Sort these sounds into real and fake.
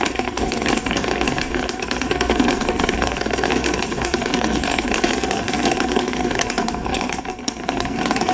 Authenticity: fake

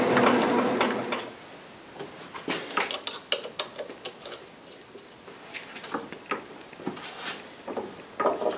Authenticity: real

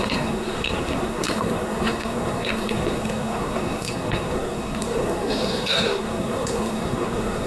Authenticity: fake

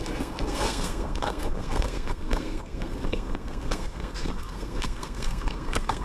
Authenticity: fake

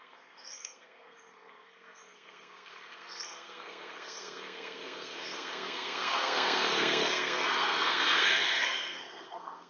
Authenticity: fake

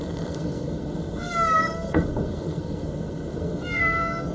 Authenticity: fake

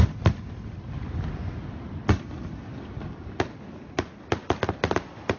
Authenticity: real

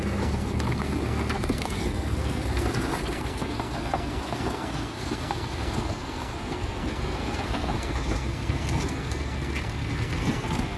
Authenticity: fake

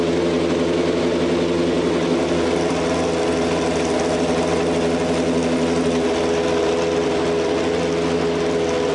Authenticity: real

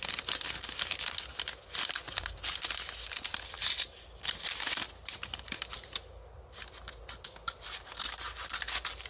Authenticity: real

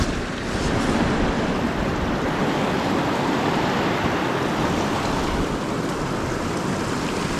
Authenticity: real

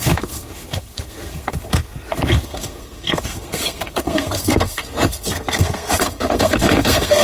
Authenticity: fake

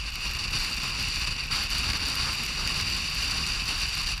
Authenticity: real